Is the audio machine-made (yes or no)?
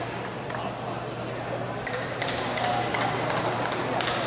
no